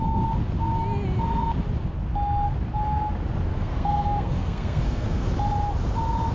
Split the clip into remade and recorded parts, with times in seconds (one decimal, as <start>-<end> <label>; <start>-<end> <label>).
0.0-3.5 recorded; 3.5-5.3 remade; 5.3-6.3 recorded